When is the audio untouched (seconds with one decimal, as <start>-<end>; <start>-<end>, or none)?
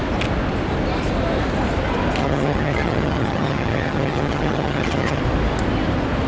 0.0-2.2; 5.2-6.3